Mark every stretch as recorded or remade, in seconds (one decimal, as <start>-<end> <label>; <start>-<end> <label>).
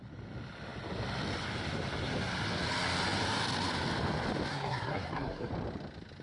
0.0-4.5 recorded; 4.5-5.5 remade; 5.5-6.2 recorded